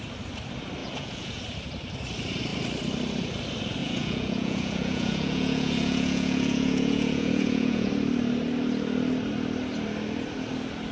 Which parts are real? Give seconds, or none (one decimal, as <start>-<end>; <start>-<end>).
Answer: 0.0-0.8; 1.4-3.8; 7.9-10.9